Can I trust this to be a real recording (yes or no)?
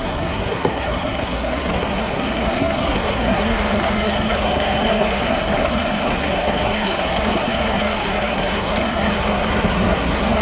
no